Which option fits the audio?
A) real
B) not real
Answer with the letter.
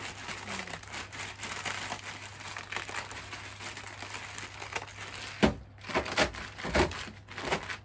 A